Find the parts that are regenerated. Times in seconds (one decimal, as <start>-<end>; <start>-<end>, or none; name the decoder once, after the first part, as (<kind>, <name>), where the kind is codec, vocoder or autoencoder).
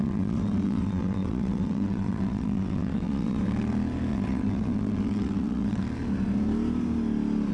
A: 0.0-3.4 (vocoder, WaveNeXt); 4.1-5.8